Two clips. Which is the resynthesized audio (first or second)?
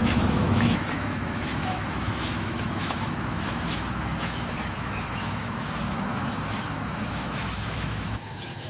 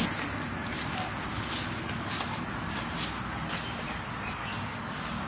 first